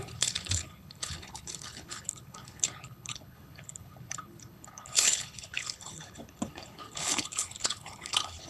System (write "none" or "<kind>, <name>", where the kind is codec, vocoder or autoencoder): codec, HILCodec